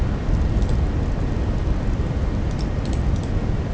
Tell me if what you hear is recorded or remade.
recorded